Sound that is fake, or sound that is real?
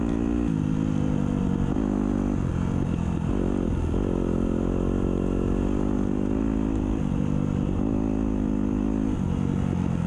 real